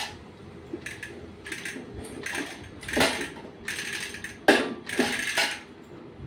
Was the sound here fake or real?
real